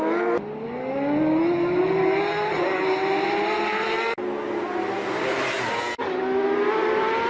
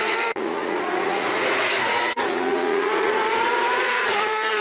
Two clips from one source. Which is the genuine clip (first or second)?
first